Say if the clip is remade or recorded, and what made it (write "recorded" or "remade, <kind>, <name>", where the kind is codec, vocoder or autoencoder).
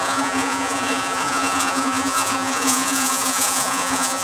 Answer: remade, vocoder, Vocos